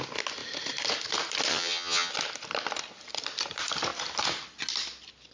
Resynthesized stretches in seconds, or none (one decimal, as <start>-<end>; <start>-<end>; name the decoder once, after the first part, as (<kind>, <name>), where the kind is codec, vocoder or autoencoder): 1.5-2.1 (vocoder, HiFi-GAN)